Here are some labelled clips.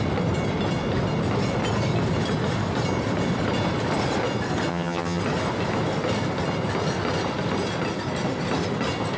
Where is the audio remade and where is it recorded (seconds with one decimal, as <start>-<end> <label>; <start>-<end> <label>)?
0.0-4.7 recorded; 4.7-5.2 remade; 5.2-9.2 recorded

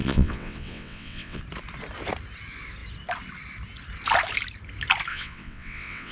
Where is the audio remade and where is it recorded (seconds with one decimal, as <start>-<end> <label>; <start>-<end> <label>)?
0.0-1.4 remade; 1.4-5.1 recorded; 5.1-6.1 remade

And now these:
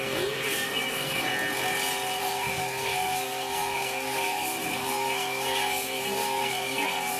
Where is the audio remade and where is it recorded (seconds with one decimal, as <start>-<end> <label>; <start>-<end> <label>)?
0.0-1.3 remade; 1.3-2.2 recorded; 2.2-7.2 remade

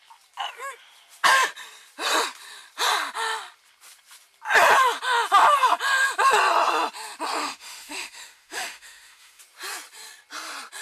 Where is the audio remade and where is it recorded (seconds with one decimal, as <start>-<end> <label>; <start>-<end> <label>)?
0.0-7.4 recorded; 7.4-9.4 remade; 9.4-10.8 recorded